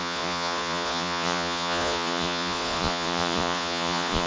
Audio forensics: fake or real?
fake